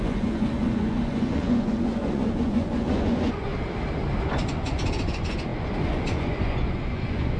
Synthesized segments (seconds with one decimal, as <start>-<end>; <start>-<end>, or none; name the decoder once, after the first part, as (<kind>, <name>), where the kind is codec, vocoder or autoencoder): 0.0-3.5 (vocoder, Vocos); 4.5-7.4